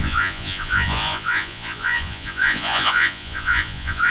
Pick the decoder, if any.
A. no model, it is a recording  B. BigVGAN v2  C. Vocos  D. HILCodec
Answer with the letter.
C